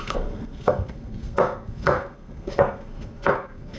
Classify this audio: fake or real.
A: fake